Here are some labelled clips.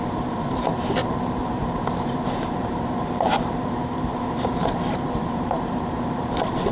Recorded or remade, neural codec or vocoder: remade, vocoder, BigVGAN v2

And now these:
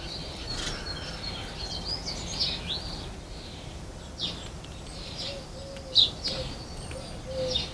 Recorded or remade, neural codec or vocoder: recorded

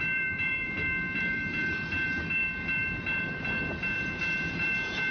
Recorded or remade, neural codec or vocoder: remade, vocoder, BigVGAN v2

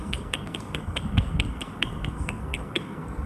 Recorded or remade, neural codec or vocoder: remade, codec, SNAC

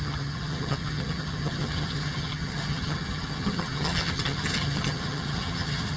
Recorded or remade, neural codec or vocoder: remade, vocoder, HiFi-GAN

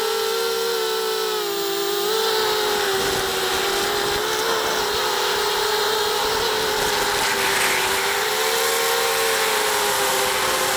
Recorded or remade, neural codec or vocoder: recorded